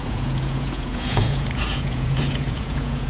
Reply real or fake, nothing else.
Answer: fake